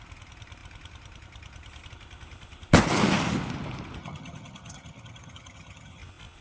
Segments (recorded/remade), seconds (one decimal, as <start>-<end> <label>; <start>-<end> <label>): 0.0-4.0 recorded; 4.0-6.0 remade; 6.0-6.4 recorded